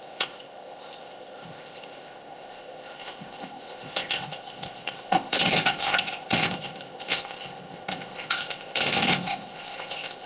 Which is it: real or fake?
fake